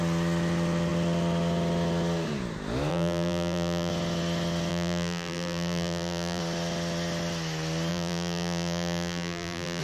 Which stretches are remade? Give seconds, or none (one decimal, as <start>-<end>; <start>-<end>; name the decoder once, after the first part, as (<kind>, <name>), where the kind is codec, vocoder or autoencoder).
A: 2.9-3.9 (vocoder, BigVGAN v2); 4.7-6.4; 7.9-9.8